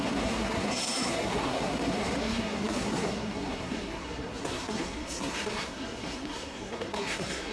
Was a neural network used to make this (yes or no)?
yes